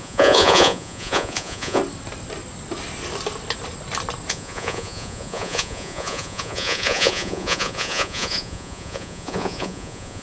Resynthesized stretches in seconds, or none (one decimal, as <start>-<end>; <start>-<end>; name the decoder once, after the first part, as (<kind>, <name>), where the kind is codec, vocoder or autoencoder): 0.0-1.8 (vocoder, Vocos); 4.3-10.2

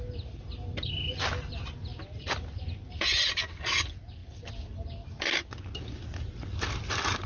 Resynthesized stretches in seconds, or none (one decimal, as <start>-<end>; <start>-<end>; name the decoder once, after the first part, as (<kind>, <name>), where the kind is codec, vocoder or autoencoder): none

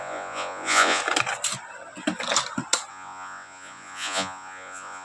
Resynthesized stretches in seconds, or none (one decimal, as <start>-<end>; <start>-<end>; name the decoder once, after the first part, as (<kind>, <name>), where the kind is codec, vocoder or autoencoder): 0.0-1.0 (vocoder, Vocos); 2.9-5.0